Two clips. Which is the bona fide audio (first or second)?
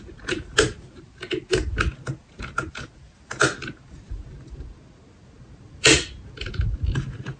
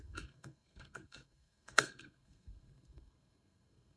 first